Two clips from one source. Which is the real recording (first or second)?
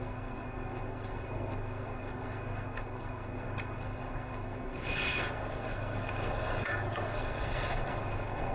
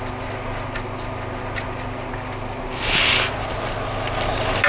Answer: second